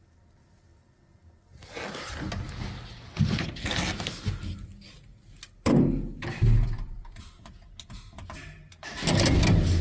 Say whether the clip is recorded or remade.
recorded